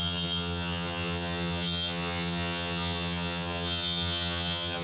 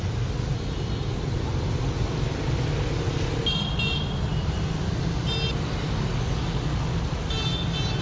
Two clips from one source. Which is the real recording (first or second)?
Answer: second